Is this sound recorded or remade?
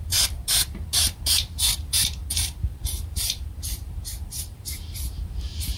remade